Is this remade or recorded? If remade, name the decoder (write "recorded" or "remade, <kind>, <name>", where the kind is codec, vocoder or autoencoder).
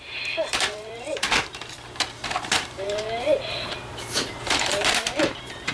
remade, vocoder, BigVGAN v2